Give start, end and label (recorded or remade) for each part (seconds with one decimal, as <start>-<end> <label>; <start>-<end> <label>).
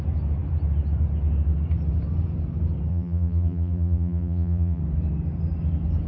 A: 0.0-2.9 recorded; 2.9-4.8 remade; 4.8-6.1 recorded